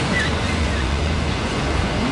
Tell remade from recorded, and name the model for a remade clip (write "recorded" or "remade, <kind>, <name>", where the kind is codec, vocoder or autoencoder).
remade, vocoder, Vocos